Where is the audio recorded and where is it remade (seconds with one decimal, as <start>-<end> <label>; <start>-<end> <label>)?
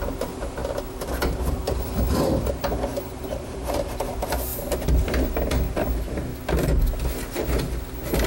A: 0.0-4.5 remade; 4.5-5.5 recorded; 5.5-6.3 remade; 6.3-8.3 recorded